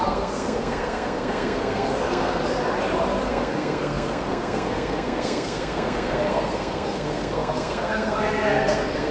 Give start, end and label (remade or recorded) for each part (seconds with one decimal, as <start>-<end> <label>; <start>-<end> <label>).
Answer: 0.0-2.4 remade; 2.4-3.3 recorded; 3.3-9.1 remade